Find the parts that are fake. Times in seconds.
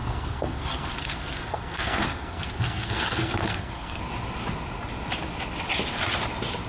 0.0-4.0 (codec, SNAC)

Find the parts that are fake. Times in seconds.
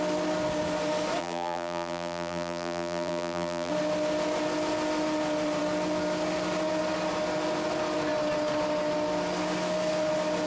1.2-3.7 (vocoder, BigVGAN v2)